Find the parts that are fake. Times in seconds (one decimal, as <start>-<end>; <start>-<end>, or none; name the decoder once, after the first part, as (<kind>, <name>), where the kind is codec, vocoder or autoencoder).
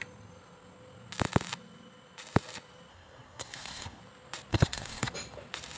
2.9-4.0 (codec, SNAC); 4.5-5.1